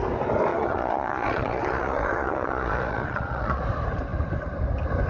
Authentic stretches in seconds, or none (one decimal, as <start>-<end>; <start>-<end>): 0.0-0.5; 3.6-5.1